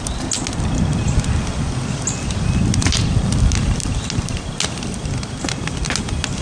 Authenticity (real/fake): real